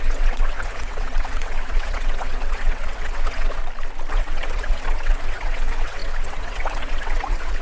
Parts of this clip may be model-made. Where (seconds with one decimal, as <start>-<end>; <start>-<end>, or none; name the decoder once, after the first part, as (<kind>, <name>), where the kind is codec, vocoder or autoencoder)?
0.0-3.6 (vocoder, WaveNeXt); 4.1-7.6